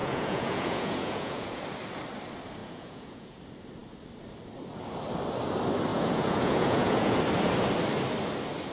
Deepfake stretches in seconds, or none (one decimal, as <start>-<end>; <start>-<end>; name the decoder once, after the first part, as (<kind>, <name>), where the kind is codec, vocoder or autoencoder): 0.0-1.6 (vocoder, Vocos); 2.6-3.4; 5.9-7.2